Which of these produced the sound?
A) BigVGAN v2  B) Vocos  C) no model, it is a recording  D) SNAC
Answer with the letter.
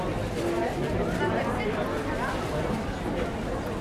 C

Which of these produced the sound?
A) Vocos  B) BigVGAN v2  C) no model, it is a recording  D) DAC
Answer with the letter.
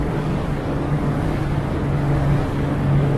D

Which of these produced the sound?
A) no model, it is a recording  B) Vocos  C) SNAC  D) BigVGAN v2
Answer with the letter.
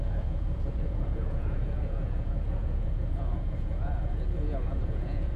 B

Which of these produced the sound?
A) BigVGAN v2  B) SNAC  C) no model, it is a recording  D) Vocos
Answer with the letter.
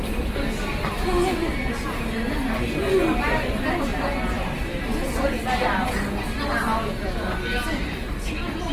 C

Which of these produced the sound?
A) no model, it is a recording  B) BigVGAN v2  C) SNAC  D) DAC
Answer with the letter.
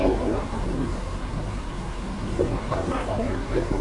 C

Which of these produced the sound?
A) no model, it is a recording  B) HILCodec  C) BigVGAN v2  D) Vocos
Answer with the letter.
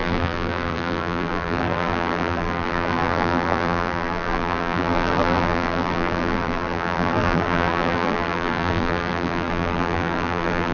C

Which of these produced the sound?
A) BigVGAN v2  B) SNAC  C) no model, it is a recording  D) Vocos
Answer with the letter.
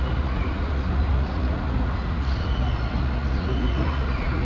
D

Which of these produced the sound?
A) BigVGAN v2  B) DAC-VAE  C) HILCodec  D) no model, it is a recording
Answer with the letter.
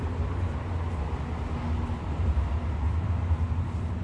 D